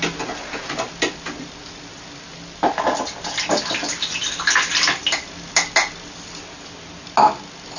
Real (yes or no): yes